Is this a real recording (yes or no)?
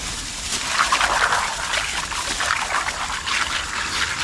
yes